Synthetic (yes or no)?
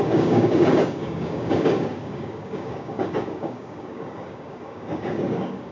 yes